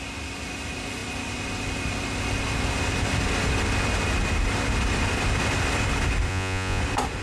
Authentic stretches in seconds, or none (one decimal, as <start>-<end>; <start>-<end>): 0.0-6.3; 6.8-7.2